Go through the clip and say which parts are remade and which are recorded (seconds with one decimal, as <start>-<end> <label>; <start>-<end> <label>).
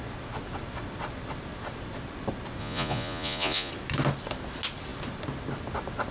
0.0-2.6 recorded; 2.6-3.7 remade; 3.7-6.1 recorded